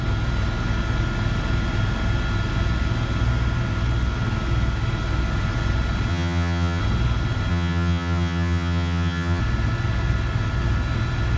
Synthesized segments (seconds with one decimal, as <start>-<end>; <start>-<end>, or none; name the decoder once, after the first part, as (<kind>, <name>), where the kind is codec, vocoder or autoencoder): 6.1-6.8 (vocoder, HiFi-GAN); 7.5-9.4